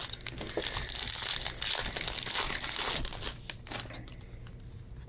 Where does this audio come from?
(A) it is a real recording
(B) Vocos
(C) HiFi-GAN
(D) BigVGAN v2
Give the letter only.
A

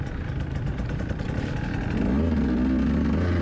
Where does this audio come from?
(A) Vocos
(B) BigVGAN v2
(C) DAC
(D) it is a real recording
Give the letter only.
D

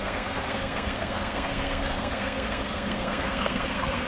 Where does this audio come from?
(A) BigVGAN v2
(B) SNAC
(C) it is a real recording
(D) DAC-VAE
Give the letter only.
B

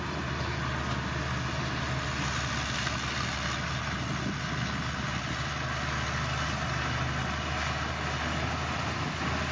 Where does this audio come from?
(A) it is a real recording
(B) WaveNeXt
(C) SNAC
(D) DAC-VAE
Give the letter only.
A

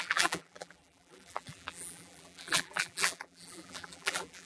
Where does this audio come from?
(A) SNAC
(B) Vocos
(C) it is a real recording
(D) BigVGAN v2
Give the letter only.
D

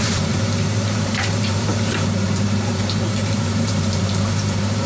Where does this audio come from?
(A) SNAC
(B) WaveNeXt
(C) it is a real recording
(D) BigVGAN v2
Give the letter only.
D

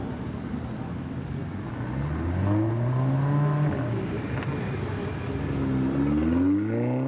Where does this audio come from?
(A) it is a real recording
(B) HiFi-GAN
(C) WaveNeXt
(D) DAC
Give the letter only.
A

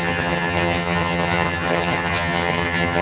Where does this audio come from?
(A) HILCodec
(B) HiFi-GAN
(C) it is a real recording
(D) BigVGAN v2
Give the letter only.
B